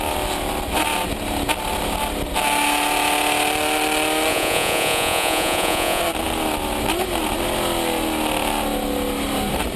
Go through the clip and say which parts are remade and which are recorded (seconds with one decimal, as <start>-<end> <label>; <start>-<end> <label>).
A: 0.0-4.3 recorded; 4.3-6.0 remade; 6.0-9.8 recorded